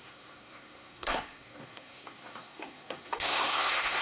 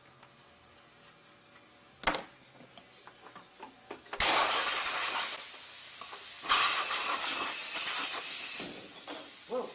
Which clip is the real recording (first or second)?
second